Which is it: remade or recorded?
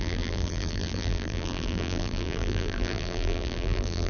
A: remade